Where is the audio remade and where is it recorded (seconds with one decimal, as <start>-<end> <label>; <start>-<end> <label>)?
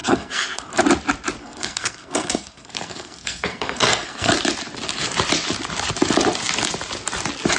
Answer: 0.0-0.7 remade; 0.7-1.4 recorded; 1.4-4.3 remade; 4.3-7.6 recorded